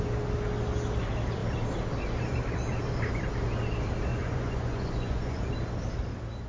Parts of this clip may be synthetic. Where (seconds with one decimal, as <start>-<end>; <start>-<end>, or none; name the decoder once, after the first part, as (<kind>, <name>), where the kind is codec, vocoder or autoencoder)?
4.1-5.4 (vocoder, Vocos)